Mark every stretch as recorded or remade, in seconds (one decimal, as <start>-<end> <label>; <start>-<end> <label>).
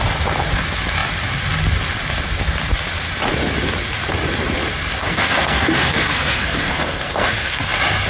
0.0-5.0 recorded; 5.0-7.6 remade; 7.6-8.1 recorded